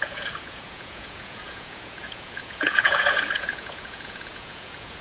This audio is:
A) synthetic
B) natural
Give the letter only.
A